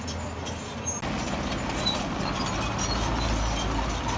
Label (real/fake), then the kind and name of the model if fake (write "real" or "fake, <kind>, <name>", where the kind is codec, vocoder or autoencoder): real